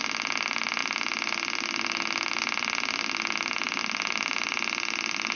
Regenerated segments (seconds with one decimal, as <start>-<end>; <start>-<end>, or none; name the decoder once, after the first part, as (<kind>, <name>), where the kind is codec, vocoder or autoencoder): none